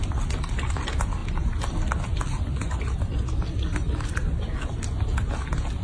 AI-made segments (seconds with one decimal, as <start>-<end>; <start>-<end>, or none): none